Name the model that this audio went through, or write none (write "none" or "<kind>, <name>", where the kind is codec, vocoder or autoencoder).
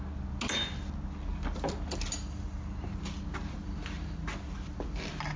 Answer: none